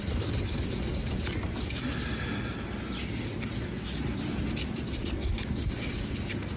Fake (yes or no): no